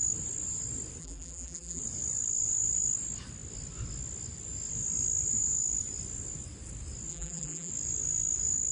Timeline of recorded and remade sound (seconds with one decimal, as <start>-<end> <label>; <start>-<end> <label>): 0.0-1.0 recorded; 1.0-1.8 remade; 1.8-7.1 recorded; 7.1-7.7 remade; 7.7-8.7 recorded